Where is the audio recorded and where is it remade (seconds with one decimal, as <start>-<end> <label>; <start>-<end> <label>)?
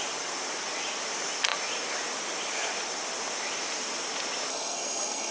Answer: 0.0-4.5 recorded; 4.5-5.3 remade